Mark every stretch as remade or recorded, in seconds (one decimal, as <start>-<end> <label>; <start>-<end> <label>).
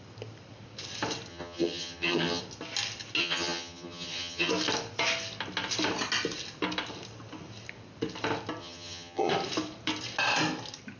0.0-1.3 recorded; 1.3-2.4 remade; 2.4-3.2 recorded; 3.2-4.5 remade; 4.5-8.6 recorded; 8.6-9.3 remade; 9.3-11.0 recorded